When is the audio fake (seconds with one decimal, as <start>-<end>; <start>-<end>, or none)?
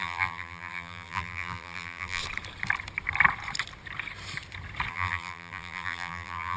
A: 0.0-2.2; 4.9-6.6